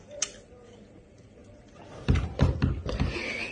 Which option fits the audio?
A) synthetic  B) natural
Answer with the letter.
B